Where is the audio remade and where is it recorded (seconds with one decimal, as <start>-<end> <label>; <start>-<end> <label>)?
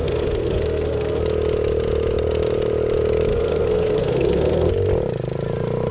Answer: 0.0-1.2 remade; 1.2-3.3 recorded; 3.3-4.7 remade; 4.7-5.9 recorded